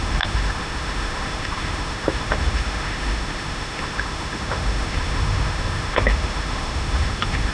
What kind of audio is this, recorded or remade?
remade